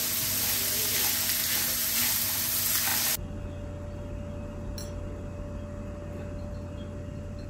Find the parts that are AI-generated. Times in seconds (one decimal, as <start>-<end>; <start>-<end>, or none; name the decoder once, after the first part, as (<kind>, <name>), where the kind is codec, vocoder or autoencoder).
1.8-2.4 (vocoder, BigVGAN v2)